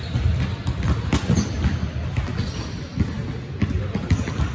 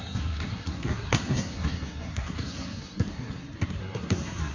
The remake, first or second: second